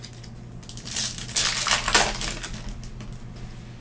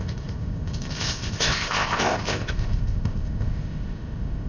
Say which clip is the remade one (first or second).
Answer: second